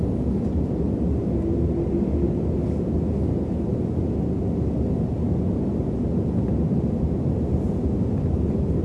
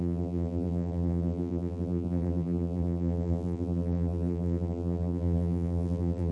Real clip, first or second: first